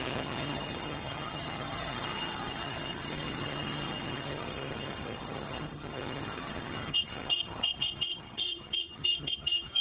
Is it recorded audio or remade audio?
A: remade